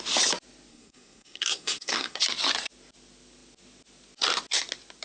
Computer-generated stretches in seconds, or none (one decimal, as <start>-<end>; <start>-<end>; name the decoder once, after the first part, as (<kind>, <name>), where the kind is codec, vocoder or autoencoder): 0.7-2.2 (codec, SNAC)